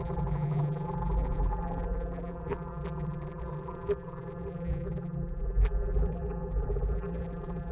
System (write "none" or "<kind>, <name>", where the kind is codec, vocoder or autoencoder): vocoder, BigVGAN v2